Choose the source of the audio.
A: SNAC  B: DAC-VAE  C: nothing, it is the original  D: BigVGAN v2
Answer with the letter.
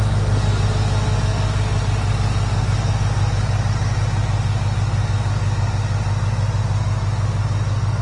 C